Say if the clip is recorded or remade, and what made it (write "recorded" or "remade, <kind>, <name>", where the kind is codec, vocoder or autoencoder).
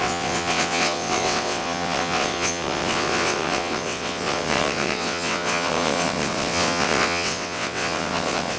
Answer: remade, vocoder, WaveNeXt